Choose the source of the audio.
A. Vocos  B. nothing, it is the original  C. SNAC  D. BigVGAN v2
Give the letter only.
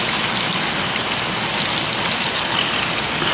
B